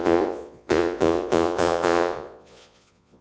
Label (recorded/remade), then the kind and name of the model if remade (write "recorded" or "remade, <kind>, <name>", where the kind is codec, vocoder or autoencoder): remade, vocoder, Vocos